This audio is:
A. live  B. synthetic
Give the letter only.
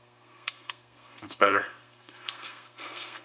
B